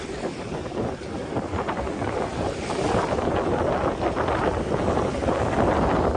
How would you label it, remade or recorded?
recorded